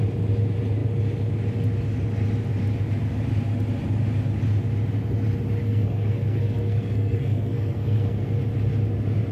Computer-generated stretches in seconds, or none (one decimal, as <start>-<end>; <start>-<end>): 5.6-8.4